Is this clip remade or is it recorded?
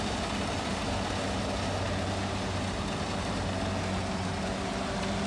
recorded